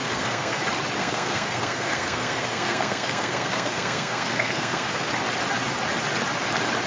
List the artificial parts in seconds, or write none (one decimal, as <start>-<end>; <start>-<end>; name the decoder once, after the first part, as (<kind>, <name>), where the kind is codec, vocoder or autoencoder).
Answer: 0.0-0.6 (codec, SNAC); 1.0-5.1